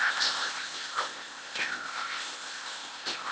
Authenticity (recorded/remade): remade